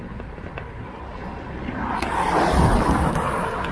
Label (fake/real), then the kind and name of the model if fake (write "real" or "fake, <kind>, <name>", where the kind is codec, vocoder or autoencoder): real